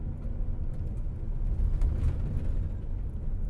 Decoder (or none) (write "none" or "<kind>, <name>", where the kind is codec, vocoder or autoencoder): none